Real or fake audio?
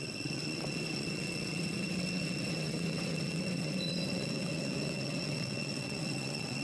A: fake